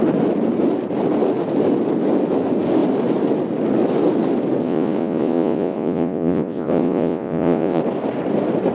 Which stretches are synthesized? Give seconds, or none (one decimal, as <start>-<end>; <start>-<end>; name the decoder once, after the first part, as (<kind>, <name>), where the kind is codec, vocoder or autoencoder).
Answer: 4.6-7.8 (vocoder, Vocos)